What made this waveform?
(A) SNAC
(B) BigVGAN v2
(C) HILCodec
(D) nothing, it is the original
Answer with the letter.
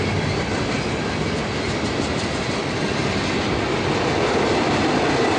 D